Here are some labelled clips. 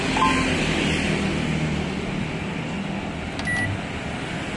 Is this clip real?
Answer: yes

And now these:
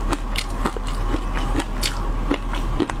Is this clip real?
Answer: yes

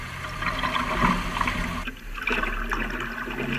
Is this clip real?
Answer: yes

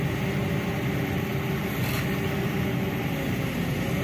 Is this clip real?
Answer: yes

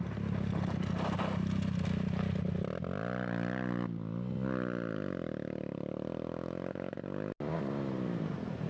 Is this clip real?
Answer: yes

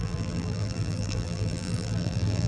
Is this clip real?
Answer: no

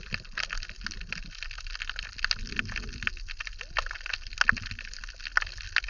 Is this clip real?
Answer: yes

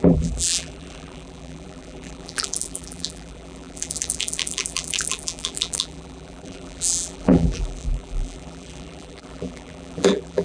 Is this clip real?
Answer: no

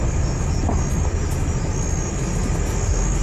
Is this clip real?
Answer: yes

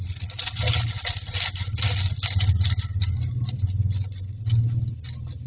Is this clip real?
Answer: yes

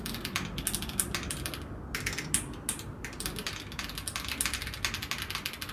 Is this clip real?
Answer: yes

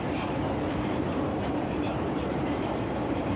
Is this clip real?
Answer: no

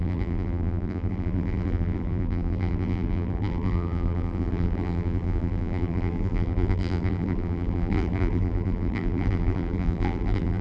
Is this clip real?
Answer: no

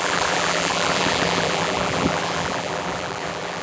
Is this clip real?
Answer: no